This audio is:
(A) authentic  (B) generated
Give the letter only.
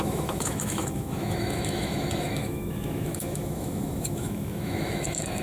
B